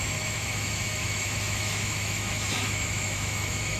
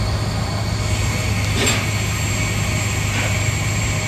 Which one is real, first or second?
second